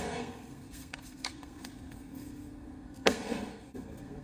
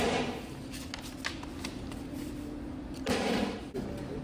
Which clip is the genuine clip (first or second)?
second